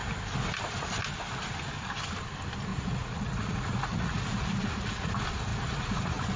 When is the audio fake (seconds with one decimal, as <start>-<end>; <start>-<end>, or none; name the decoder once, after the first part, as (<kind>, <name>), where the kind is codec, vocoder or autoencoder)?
2.7-5.1 (vocoder, Vocos); 5.5-6.4

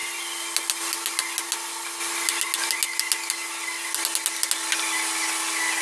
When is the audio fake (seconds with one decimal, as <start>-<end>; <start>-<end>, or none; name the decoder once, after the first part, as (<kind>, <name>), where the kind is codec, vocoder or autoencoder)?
none

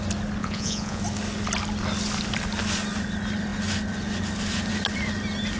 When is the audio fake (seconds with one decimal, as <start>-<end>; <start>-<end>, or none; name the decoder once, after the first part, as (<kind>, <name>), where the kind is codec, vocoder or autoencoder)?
0.4-1.0 (vocoder, Vocos)

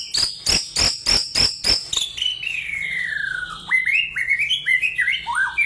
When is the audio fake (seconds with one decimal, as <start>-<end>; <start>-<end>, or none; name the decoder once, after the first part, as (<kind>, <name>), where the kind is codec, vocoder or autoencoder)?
none